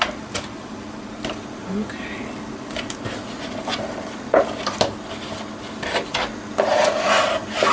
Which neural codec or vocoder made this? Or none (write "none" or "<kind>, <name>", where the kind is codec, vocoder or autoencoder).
none